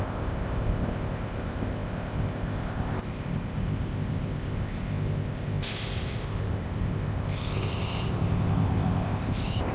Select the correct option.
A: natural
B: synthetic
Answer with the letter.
B